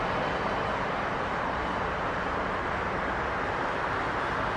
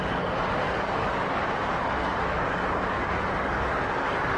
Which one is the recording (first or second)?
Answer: first